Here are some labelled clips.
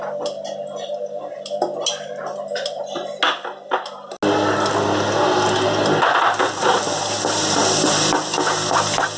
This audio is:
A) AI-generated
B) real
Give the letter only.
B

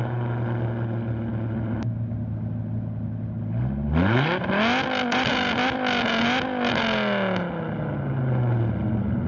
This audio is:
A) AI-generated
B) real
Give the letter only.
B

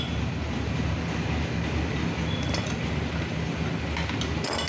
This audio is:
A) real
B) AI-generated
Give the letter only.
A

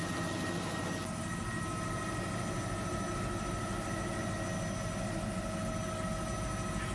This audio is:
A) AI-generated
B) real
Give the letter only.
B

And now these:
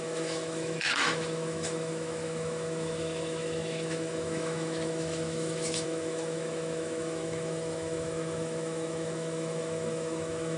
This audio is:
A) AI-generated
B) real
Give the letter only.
A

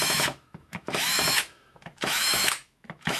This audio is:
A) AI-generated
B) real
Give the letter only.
A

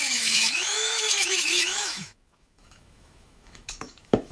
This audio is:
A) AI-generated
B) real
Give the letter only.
A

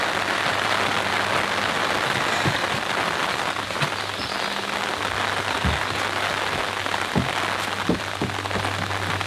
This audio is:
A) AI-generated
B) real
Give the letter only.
B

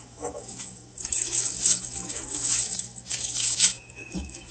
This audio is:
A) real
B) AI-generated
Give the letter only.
B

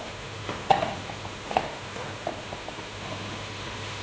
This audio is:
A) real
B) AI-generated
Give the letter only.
B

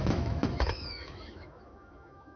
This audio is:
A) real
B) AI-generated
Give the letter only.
B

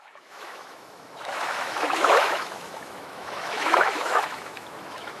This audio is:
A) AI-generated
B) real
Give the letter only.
A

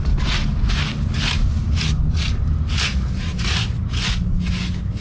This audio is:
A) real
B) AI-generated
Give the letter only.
A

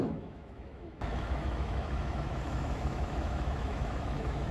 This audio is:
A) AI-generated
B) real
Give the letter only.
A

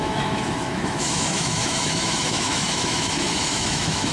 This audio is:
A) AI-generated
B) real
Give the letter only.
A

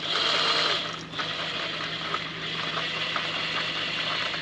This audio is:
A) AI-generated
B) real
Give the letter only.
B